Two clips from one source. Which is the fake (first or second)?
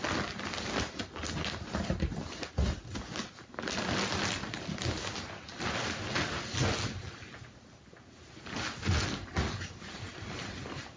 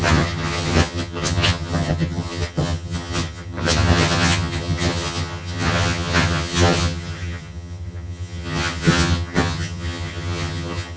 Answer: second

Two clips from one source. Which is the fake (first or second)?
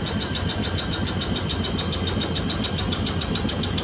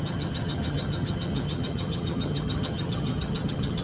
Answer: second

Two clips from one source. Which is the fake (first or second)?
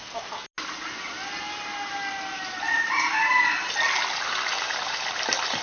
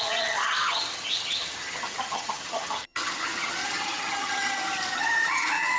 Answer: second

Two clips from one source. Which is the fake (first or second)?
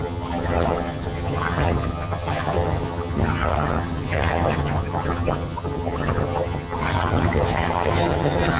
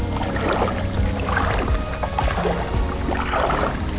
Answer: first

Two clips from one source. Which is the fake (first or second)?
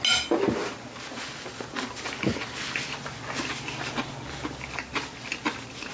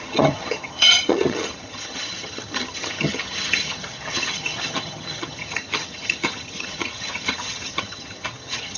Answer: second